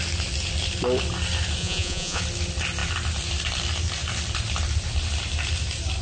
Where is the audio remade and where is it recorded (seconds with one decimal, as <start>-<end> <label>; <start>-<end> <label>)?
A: 0.0-1.6 recorded; 1.6-2.2 remade; 2.2-6.0 recorded